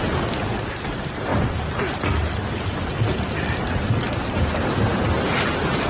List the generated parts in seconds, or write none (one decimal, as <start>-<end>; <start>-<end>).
none